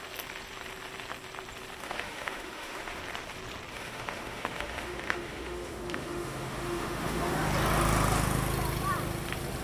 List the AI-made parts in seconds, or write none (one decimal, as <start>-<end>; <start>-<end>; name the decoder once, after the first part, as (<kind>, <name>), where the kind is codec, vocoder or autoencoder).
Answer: 1.8-3.0 (autoencoder, DAC-VAE); 3.7-7.5